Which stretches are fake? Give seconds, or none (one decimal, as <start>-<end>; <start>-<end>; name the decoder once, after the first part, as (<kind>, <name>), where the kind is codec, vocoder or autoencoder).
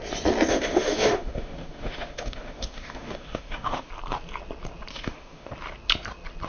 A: 0.5-3.9 (autoencoder, DAC-VAE); 4.9-5.5